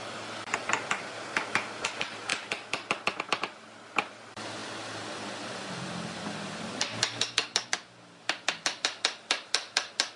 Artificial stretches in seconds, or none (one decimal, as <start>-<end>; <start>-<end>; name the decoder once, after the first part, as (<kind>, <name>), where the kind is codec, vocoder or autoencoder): none